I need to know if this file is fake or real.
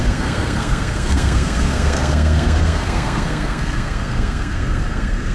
fake